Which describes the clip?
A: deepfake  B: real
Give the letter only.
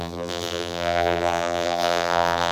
A